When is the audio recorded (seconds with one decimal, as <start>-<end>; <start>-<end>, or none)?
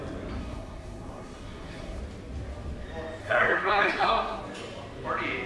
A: 0.0-0.4; 2.0-3.2; 4.4-5.5